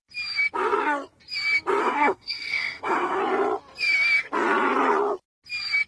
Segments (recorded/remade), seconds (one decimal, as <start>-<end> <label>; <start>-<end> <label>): 0.0-1.8 recorded; 1.8-3.2 remade; 3.2-5.9 recorded

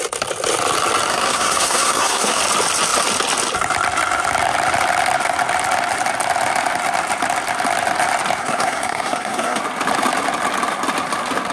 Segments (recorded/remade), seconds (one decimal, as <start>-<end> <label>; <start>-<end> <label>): 0.0-1.1 recorded; 1.1-2.4 remade; 2.4-8.4 recorded; 8.4-9.6 remade; 9.6-11.5 recorded

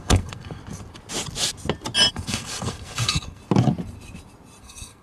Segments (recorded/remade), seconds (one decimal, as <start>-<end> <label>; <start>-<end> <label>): 0.0-0.6 remade; 0.6-2.1 recorded; 2.1-3.4 remade; 3.4-4.6 recorded; 4.6-5.0 remade

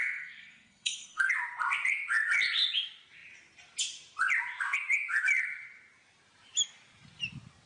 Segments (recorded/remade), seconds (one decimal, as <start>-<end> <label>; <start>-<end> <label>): 0.0-1.3 remade; 1.3-7.7 recorded

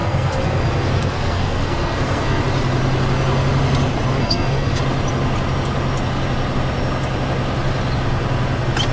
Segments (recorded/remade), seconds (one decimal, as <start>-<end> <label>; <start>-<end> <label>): 0.0-2.4 remade; 2.4-4.2 recorded; 4.2-4.8 remade; 4.8-8.9 recorded

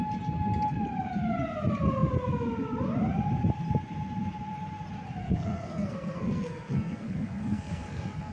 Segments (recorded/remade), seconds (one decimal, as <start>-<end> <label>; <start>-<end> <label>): 0.0-5.2 recorded; 5.2-8.3 remade